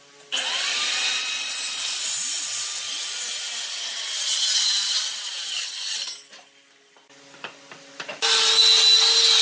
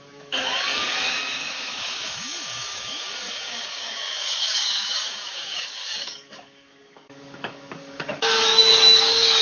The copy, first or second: second